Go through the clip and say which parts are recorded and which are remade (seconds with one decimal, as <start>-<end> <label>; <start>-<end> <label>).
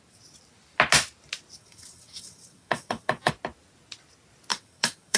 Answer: 0.0-1.6 recorded; 1.6-3.3 remade; 3.3-4.5 recorded; 4.5-5.2 remade